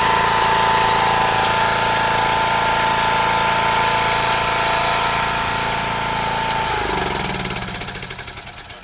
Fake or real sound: real